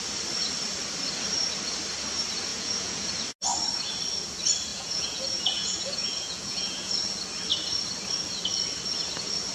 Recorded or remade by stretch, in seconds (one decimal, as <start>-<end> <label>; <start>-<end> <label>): 0.0-2.5 recorded; 2.5-3.1 remade; 3.1-4.7 recorded; 4.7-6.9 remade; 6.9-9.5 recorded